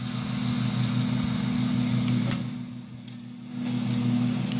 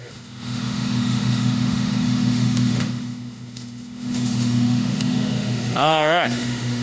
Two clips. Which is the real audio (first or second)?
first